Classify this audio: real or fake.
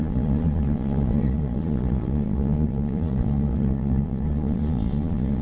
fake